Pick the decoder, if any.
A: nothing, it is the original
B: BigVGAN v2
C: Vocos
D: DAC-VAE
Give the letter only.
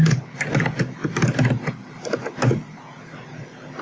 A